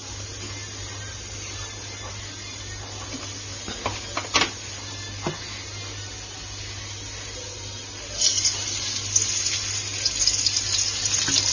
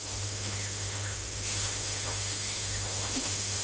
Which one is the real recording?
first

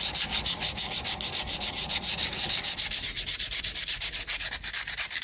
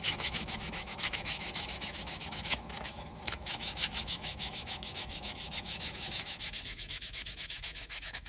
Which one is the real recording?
first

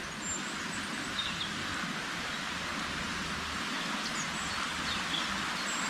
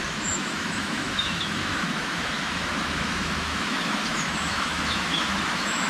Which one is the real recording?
first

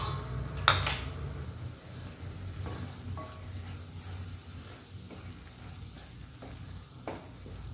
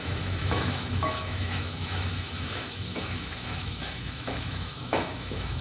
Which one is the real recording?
first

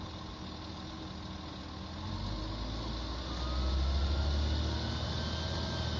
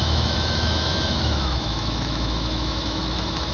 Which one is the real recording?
first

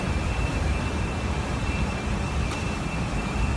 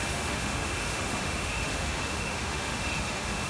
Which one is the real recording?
first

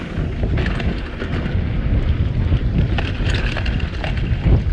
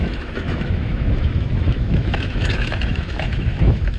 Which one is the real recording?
first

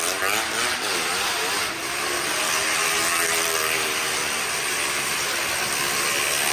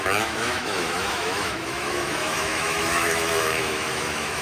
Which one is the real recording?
first